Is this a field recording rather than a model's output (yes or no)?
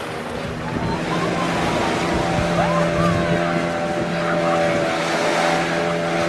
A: yes